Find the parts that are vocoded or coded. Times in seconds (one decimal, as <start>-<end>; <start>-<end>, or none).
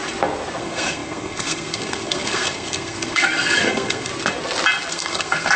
0.6-4.1; 4.9-5.6